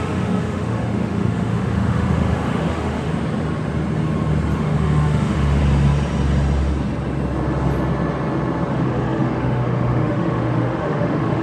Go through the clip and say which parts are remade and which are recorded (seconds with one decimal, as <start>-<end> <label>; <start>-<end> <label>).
0.0-3.1 remade; 3.1-4.6 recorded; 4.6-5.6 remade; 5.6-8.7 recorded; 8.7-11.4 remade